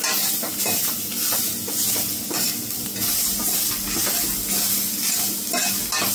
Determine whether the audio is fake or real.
real